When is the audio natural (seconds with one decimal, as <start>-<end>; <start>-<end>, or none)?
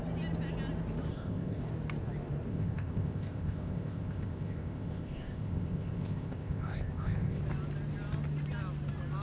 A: 0.0-1.1; 1.6-2.5; 7.4-9.2